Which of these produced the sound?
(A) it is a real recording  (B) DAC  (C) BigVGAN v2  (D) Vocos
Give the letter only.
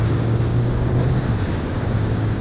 B